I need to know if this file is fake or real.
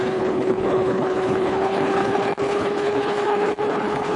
fake